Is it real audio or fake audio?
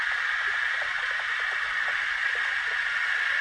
real